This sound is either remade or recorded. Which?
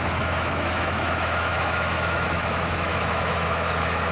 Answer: remade